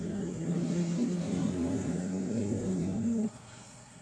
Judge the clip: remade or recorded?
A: remade